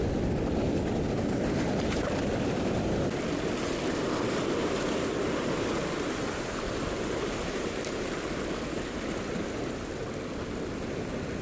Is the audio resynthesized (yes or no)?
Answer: no